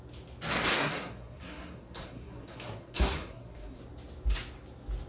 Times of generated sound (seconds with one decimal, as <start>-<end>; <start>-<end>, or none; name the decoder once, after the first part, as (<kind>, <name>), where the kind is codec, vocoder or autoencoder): 0.7-3.8 (codec, SNAC)

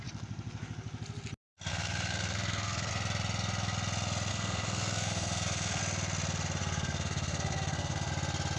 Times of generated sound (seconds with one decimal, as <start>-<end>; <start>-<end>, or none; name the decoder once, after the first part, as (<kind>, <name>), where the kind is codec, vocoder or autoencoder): 1.7-2.9 (codec, SNAC); 4.3-5.8; 6.6-8.1